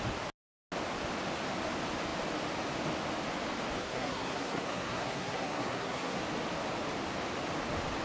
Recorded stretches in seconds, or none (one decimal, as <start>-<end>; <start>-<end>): 0.0-3.8; 6.2-8.0